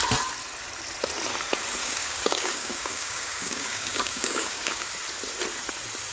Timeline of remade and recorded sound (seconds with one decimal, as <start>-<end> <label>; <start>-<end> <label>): 0.0-1.8 recorded; 1.8-4.9 remade; 4.9-6.1 recorded